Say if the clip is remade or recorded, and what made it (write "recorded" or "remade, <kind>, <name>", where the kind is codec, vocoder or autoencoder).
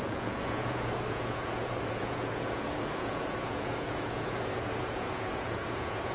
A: remade, vocoder, Vocos